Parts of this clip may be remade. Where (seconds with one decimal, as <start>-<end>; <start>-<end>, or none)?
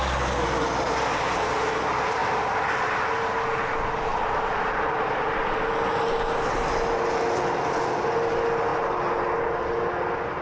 none